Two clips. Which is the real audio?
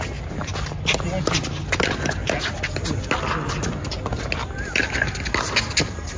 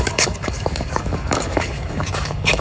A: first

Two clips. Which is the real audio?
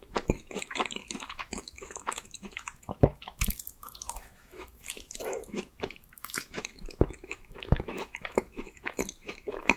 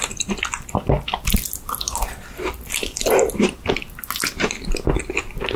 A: second